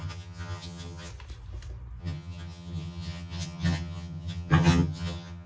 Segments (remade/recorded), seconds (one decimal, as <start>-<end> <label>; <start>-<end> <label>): 0.0-1.1 remade; 1.1-2.0 recorded; 2.0-5.5 remade